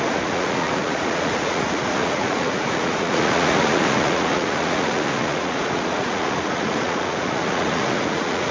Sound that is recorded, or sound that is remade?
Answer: remade